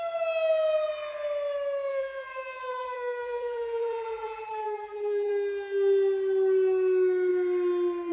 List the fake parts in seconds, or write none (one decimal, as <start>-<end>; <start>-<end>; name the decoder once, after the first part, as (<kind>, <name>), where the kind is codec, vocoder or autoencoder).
1.9-5.3 (vocoder, BigVGAN v2)